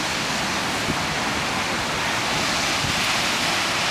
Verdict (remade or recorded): recorded